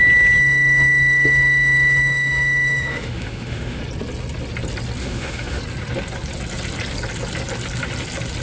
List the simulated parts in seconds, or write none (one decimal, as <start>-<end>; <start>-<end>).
0.4-3.8; 5.0-5.6